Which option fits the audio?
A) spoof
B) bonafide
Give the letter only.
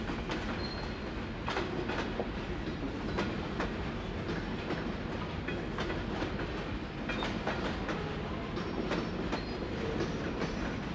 B